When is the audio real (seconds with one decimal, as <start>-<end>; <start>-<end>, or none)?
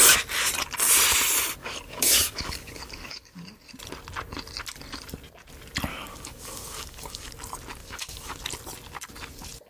0.0-1.6; 3.7-5.9; 7.3-7.8; 8.4-9.7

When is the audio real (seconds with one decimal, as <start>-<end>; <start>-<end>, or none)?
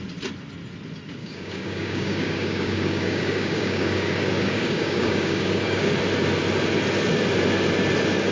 0.0-1.2; 5.9-8.3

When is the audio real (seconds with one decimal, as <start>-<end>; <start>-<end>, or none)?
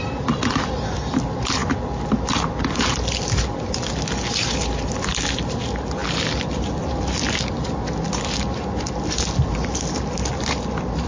0.0-11.1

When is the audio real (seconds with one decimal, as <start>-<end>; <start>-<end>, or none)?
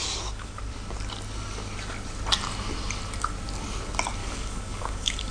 0.6-4.2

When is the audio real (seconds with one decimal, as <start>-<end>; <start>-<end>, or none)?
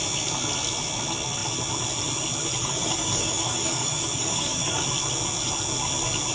0.0-2.6; 4.8-6.3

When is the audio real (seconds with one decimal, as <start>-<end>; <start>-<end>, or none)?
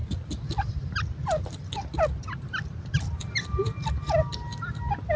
0.0-5.2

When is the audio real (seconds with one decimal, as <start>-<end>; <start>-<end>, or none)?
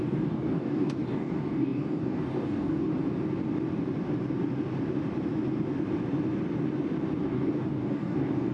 2.9-7.2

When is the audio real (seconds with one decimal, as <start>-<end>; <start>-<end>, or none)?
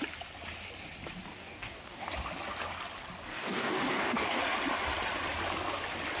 0.0-1.3; 2.1-3.3; 4.4-6.2